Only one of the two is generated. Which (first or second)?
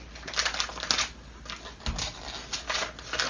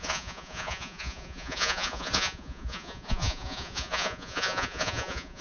second